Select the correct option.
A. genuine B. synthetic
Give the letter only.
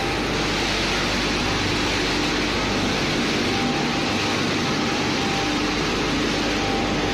A